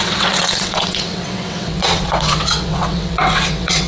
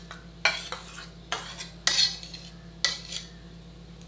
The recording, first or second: second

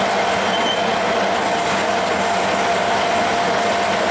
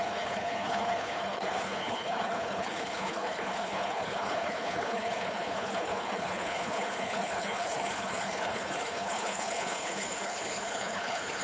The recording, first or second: first